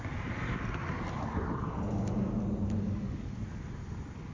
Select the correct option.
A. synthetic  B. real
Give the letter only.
B